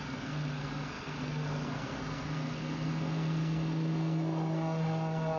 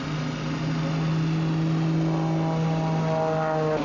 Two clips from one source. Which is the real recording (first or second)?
second